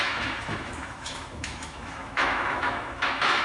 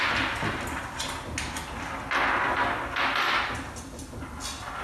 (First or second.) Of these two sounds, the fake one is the first